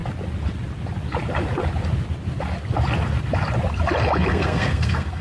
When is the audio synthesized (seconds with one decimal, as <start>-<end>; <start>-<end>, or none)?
4.3-5.2